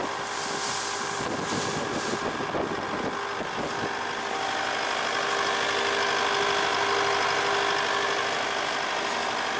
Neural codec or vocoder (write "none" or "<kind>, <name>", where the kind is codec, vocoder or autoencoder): none